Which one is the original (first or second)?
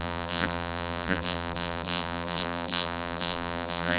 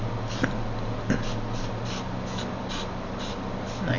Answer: second